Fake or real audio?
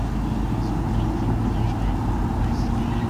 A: real